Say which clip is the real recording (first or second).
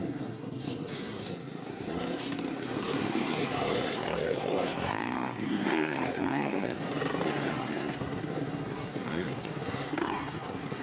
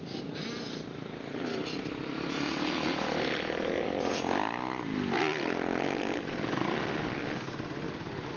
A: second